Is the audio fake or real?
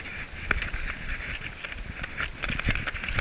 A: real